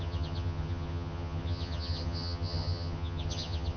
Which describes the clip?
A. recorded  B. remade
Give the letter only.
B